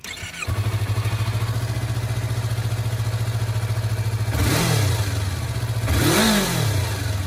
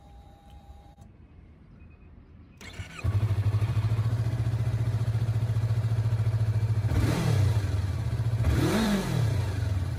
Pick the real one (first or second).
first